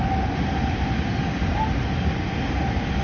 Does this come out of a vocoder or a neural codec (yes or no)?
no